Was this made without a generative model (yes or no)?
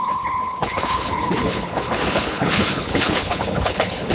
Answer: no